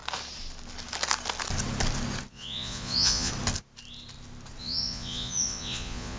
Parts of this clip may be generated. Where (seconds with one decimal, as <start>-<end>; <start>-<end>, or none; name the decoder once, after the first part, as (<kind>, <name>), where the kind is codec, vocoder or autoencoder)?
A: 2.3-3.3 (vocoder, Vocos); 4.6-6.2

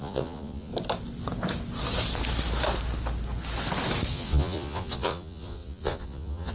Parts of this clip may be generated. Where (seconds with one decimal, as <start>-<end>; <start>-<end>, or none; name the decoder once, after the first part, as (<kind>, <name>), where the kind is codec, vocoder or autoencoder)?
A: 0.0-0.7 (vocoder, Vocos); 4.1-6.5